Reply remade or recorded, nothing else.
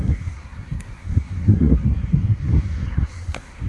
remade